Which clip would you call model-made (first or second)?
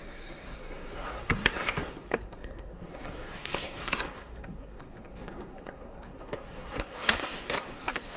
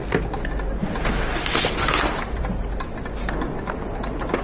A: first